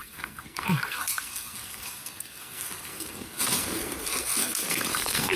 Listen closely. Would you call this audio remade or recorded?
remade